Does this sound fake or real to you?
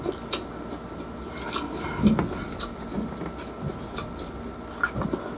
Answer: real